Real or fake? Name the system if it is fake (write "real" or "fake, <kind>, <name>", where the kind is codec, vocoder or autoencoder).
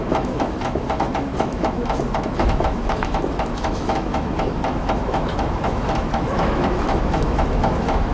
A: fake, autoencoder, DAC-VAE